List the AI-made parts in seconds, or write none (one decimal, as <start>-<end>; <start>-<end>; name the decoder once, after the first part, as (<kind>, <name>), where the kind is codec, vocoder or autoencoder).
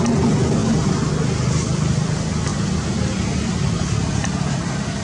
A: none